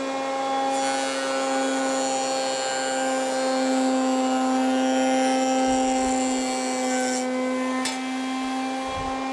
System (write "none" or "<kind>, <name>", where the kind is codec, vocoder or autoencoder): none